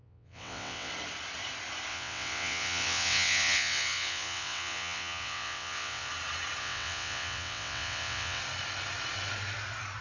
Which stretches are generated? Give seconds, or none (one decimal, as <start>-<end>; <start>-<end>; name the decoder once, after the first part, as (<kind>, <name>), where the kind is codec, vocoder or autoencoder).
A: 0.0-0.9 (vocoder, WaveNeXt); 1.9-6.1; 6.6-8.4